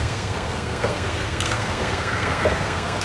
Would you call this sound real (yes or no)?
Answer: no